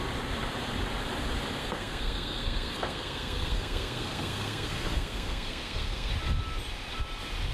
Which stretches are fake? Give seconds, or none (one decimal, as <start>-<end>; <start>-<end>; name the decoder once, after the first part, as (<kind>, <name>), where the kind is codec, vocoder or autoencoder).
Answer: 1.6-6.1 (codec, SNAC)